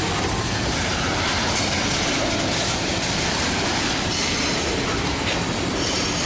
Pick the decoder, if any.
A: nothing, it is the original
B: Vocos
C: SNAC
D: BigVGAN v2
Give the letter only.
A